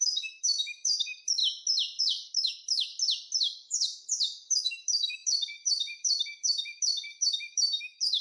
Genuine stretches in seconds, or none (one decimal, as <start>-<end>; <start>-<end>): 1.4-2.0; 2.9-3.4